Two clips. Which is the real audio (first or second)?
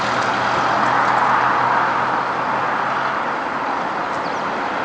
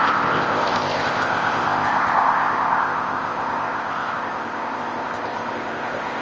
first